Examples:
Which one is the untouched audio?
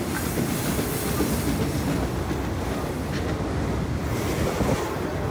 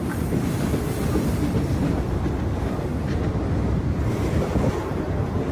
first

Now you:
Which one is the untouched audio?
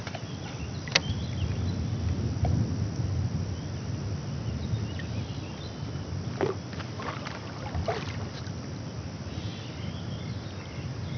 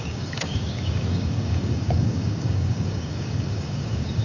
first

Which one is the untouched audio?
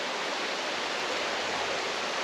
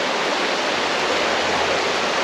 second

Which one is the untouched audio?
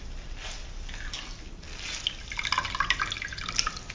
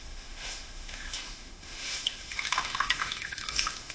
first